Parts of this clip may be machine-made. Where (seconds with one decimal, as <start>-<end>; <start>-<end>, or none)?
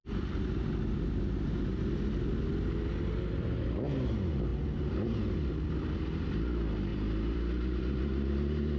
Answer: 0.0-0.7; 6.9-7.8